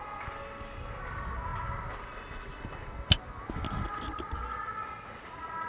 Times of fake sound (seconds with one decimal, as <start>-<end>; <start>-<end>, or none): none